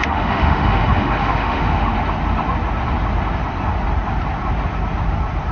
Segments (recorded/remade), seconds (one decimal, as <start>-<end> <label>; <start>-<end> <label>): 0.0-1.9 remade; 1.9-5.5 recorded